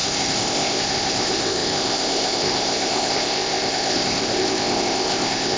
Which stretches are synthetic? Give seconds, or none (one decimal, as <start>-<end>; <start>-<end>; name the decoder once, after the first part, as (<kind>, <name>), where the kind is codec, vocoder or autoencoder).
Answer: 0.0-5.6 (codec, ZipCodec)